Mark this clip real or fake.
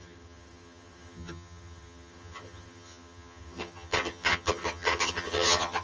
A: fake